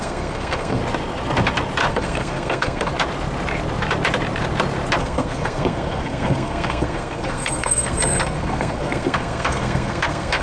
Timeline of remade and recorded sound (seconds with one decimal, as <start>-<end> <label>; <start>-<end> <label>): 0.0-0.8 remade; 0.8-1.9 recorded; 1.9-2.9 remade; 2.9-5.0 recorded; 5.0-10.4 remade